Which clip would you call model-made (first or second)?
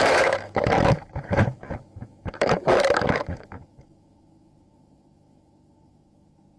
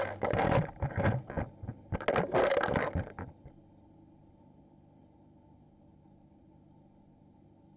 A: first